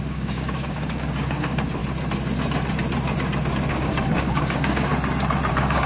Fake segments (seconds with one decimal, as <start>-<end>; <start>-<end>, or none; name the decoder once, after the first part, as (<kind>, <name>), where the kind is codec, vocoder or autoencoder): 0.0-1.8 (codec, DAC); 3.7-4.9; 5.5-5.9